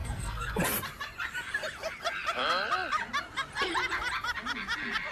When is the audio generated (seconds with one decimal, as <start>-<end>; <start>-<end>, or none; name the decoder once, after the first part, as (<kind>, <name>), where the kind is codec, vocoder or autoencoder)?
0.0-0.6 (codec, SNAC)